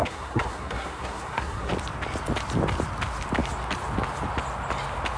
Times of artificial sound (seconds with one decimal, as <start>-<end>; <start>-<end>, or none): 0.0-1.7